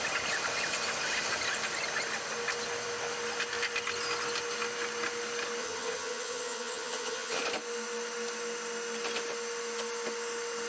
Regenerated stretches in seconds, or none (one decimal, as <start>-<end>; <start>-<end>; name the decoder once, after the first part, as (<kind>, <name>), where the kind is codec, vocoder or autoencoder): 5.6-7.4 (vocoder, HiFi-GAN)